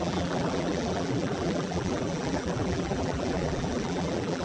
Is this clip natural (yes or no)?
no